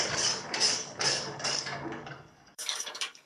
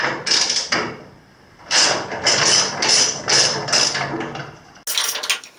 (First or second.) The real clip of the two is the second